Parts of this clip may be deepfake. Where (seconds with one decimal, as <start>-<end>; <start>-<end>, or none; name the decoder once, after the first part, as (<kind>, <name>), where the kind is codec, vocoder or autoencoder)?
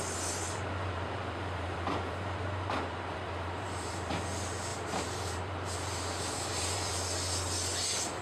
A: 0.4-4.1 (vocoder, BigVGAN v2); 4.7-6.9